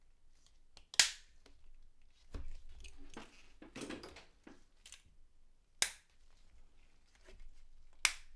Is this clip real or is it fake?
real